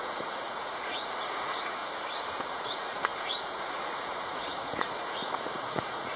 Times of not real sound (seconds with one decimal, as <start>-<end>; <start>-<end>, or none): 0.0-1.8; 2.4-6.2